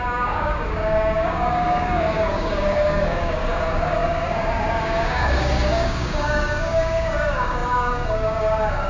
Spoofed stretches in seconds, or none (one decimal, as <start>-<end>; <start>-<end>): 0.0-8.9